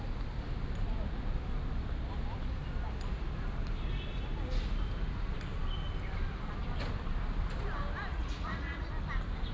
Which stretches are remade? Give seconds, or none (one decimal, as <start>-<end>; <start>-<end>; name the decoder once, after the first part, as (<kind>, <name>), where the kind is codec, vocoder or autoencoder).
8.1-8.9 (vocoder, Vocos)